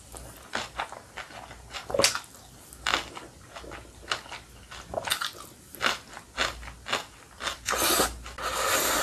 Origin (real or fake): real